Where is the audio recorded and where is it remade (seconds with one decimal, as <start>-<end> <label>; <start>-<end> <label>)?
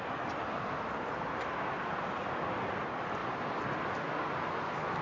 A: 0.0-5.0 recorded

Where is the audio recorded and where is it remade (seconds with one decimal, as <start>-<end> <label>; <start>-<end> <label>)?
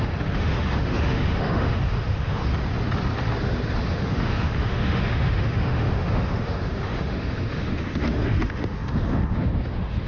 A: 0.0-2.4 remade; 2.4-3.9 recorded; 3.9-10.1 remade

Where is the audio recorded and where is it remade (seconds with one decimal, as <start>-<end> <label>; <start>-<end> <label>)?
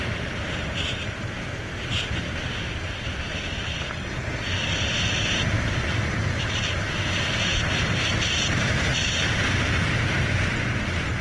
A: 0.0-11.2 recorded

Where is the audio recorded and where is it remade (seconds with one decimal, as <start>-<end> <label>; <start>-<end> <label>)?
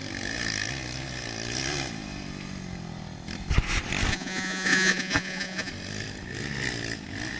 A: 0.0-4.1 recorded; 4.1-5.7 remade; 5.7-7.4 recorded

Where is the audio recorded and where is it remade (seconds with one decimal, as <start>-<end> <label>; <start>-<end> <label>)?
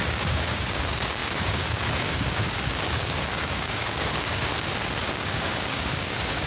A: 0.0-4.5 remade; 4.5-5.1 recorded; 5.1-6.5 remade